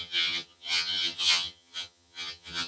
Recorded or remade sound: remade